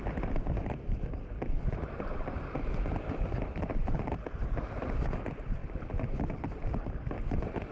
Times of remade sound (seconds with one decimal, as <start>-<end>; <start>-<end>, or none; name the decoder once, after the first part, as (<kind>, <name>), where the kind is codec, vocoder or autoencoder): none